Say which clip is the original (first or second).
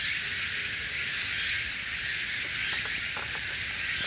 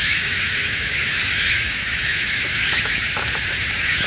first